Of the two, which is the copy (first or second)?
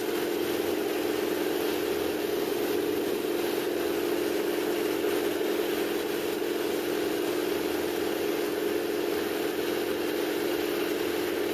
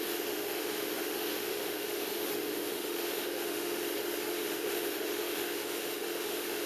second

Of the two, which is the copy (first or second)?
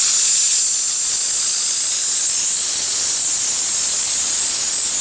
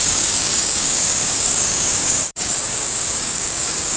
second